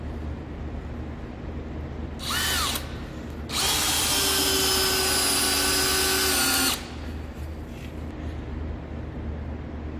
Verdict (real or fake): real